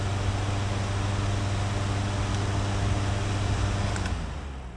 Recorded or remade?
recorded